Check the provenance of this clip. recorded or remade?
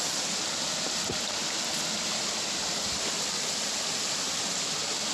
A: recorded